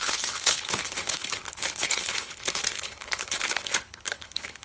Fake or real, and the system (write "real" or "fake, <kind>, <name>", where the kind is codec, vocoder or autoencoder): fake, codec, HILCodec